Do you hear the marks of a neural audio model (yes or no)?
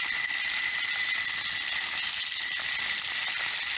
no